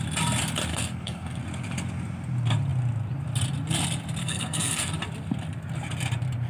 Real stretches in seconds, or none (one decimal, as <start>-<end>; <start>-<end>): 0.0-0.7; 1.4-4.2; 4.9-6.5